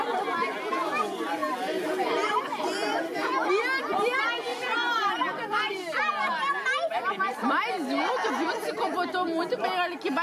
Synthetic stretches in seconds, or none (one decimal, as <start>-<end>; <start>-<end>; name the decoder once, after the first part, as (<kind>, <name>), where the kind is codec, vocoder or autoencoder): 1.4-3.8 (vocoder, BigVGAN v2); 4.5-6.5